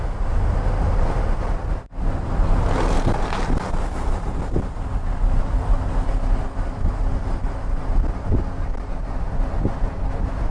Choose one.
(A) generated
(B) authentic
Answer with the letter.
B